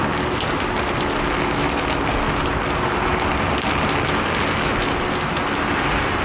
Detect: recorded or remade recorded